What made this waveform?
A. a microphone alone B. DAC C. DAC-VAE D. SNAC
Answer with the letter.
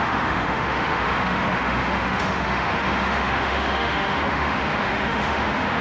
C